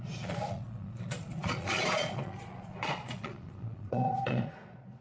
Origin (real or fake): fake